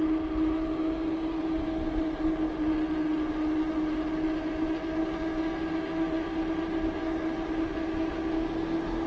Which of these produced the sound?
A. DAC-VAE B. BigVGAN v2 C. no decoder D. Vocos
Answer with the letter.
C